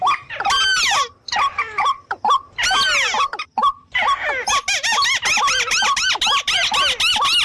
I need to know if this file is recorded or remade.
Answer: recorded